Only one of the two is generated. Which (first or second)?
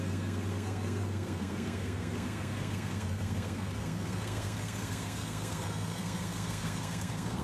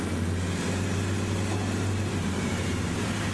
first